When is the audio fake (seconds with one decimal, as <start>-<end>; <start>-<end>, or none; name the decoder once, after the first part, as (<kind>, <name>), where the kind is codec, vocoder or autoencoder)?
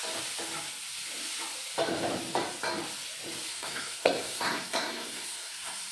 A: 3.5-5.9 (codec, SNAC)